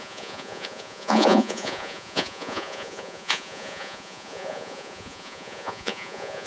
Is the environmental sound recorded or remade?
remade